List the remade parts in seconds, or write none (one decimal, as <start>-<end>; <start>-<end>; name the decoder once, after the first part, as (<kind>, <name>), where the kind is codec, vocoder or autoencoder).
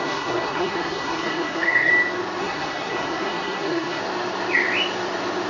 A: 0.0-1.9 (codec, SNAC); 2.4-4.0